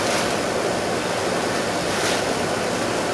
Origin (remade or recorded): recorded